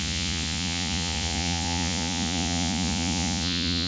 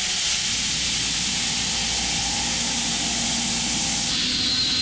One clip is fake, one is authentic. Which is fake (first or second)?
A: first